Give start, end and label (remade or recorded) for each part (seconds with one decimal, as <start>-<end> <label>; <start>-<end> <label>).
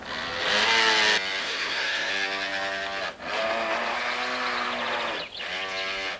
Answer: 0.0-1.4 recorded; 1.4-2.1 remade; 2.1-6.2 recorded